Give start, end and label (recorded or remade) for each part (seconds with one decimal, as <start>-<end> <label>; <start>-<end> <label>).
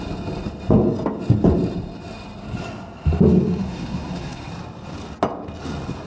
0.0-3.6 recorded; 3.6-4.5 remade; 4.5-6.1 recorded